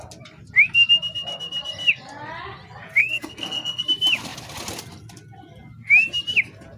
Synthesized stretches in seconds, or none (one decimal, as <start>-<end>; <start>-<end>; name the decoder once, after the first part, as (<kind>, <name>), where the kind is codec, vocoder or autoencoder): 3.0-3.8 (codec, SNAC)